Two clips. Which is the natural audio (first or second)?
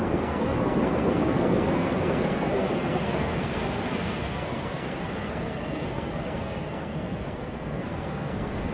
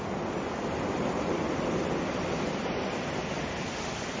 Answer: second